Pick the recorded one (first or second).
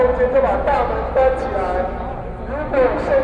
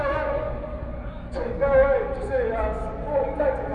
first